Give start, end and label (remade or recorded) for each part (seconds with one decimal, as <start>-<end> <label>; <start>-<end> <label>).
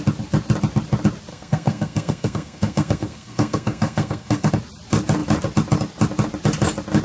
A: 0.0-1.3 recorded; 1.3-4.5 remade; 4.5-7.0 recorded